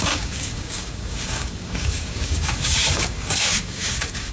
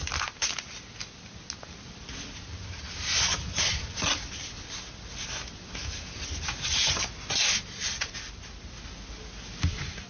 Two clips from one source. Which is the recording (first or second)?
second